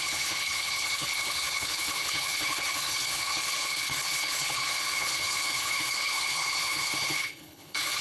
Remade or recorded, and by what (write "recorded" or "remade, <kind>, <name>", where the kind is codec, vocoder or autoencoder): remade, codec, HILCodec